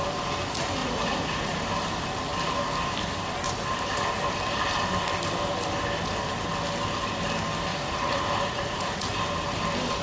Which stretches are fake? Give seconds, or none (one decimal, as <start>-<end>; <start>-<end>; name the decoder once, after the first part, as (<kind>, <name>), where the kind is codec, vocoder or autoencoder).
0.8-1.6 (vocoder, Vocos); 7.7-9.1